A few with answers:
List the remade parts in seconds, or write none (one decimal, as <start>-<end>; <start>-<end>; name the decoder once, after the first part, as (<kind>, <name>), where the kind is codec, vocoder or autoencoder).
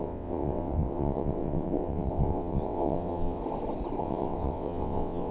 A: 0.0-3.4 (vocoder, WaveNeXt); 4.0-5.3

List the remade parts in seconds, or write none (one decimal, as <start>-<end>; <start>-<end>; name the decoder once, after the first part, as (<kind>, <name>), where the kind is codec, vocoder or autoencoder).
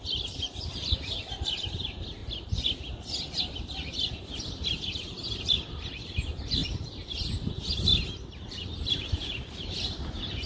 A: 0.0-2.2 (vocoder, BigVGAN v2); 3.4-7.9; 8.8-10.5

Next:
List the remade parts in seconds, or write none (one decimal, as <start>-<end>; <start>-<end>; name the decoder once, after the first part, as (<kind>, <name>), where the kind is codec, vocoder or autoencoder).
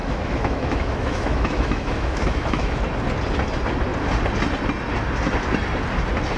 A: 0.0-2.8 (autoencoder, DAC-VAE)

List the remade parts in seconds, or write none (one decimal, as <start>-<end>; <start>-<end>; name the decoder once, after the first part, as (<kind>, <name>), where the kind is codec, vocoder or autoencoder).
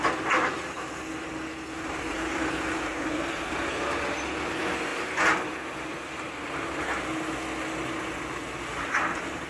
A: 4.9-5.9 (vocoder, BigVGAN v2)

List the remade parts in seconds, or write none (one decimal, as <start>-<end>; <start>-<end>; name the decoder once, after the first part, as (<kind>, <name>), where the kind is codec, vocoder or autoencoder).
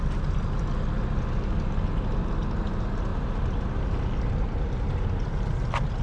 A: none